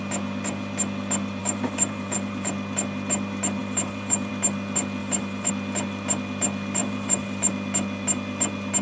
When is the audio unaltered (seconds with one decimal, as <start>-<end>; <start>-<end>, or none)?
0.0-1.4; 2.5-3.6; 4.3-5.0; 5.5-6.8; 7.5-8.8